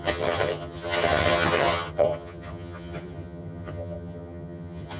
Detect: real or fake fake